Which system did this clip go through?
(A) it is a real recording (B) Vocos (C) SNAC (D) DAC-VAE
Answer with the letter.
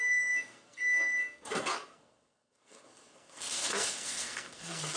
C